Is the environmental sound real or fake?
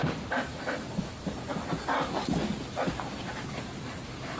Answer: real